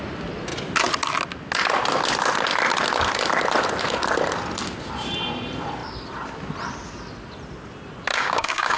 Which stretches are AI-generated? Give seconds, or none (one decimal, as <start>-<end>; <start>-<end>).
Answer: 8.1-8.8